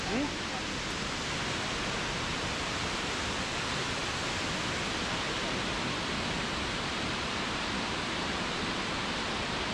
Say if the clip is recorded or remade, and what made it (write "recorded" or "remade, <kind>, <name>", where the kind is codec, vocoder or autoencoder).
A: recorded